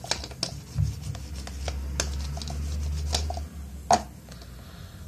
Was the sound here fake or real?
real